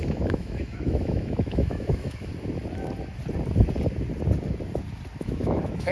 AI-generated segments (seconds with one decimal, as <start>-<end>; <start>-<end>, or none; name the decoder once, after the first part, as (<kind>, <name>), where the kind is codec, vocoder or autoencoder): 0.0-2.3 (autoencoder, DAC-VAE); 5.2-5.9